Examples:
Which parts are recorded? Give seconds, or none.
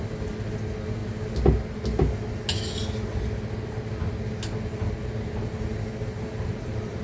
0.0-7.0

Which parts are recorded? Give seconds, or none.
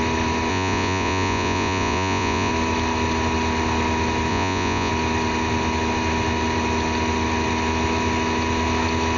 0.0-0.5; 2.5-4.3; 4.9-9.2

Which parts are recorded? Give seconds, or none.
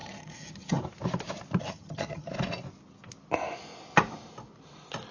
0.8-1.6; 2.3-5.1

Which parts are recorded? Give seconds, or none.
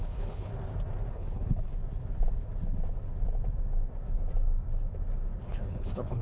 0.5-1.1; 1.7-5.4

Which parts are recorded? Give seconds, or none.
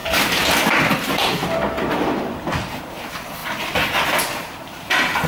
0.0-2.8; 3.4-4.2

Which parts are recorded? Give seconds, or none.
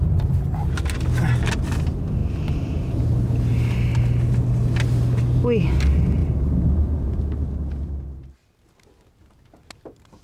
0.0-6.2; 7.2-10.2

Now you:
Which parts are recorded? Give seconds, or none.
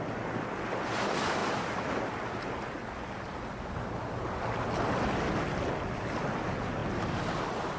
0.0-7.8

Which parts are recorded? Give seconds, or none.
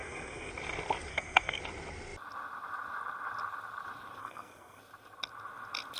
0.5-1.1; 1.6-4.2; 4.8-6.0